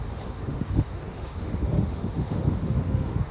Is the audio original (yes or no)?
no